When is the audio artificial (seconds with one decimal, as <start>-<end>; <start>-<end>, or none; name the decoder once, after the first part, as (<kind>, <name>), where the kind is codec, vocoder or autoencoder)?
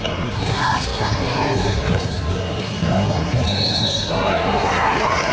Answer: 0.0-5.3 (codec, SNAC)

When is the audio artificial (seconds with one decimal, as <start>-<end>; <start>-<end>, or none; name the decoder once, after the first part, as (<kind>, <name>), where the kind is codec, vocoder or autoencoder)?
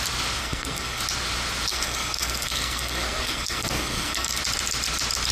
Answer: 0.4-1.0 (codec, SNAC); 1.7-4.4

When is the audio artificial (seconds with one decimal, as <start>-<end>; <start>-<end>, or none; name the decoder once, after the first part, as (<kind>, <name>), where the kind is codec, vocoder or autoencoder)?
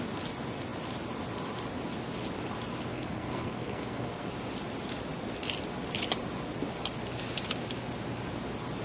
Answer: 2.9-4.3 (codec, SNAC)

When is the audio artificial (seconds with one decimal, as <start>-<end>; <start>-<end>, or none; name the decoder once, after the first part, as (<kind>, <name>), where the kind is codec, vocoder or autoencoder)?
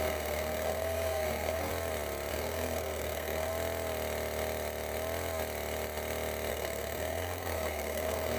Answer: 0.0-1.7 (codec, SNAC); 2.3-3.5; 6.5-8.4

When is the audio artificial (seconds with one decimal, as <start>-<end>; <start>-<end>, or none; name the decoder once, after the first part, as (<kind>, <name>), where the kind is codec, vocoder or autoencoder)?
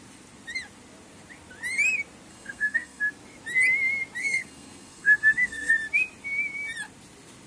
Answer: 2.3-3.0 (codec, SNAC); 4.2-5.7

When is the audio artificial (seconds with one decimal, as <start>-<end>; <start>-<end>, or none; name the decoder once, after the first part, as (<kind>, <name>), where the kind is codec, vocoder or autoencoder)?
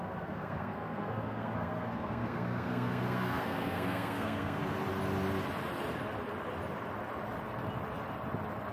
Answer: 0.0-4.6 (codec, SNAC)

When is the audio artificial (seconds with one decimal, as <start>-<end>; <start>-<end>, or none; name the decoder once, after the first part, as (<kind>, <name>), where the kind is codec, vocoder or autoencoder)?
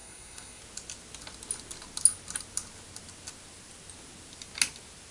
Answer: 0.0-0.6 (codec, SNAC)